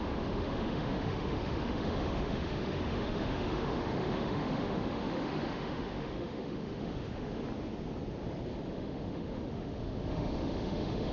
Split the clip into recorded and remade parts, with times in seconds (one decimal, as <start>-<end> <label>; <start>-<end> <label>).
0.0-7.4 remade; 7.4-8.7 recorded; 8.7-11.1 remade